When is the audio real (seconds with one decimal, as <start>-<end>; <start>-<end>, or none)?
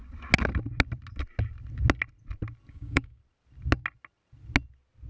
0.0-2.7; 3.2-5.1